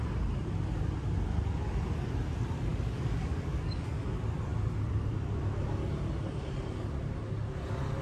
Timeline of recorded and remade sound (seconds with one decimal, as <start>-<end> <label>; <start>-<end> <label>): 0.0-2.7 recorded; 2.7-4.0 remade; 4.0-8.0 recorded